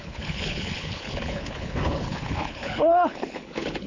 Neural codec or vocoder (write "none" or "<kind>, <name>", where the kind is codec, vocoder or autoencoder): codec, HILCodec